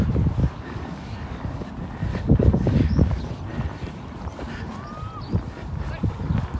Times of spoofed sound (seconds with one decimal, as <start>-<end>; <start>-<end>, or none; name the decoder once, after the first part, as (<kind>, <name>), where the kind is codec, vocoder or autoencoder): 0.4-1.7 (codec, DAC); 2.1-3.3